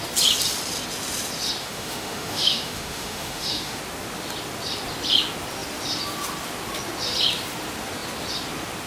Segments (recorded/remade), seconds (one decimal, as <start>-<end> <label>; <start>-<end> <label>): 0.0-1.6 recorded; 1.6-3.8 remade; 3.8-8.9 recorded